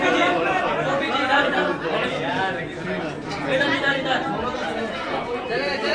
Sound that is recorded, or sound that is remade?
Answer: recorded